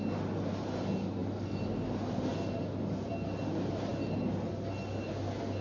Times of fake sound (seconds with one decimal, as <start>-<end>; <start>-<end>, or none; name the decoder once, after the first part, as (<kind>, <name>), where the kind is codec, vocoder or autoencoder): none